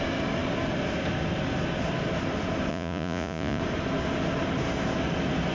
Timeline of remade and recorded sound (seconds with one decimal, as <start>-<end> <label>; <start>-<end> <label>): 0.0-2.7 recorded; 2.7-3.6 remade; 3.6-5.5 recorded